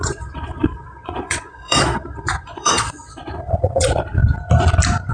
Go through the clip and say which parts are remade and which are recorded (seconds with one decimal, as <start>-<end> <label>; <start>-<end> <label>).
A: 0.0-4.2 remade; 4.2-5.1 recorded